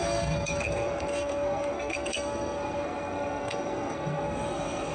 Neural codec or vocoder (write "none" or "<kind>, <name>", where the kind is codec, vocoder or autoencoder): codec, SNAC